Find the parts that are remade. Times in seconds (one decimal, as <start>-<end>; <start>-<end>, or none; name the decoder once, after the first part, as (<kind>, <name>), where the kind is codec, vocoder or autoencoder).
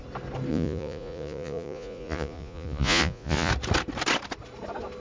0.5-3.5 (vocoder, Vocos)